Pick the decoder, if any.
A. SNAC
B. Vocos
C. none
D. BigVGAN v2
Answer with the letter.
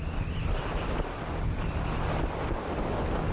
C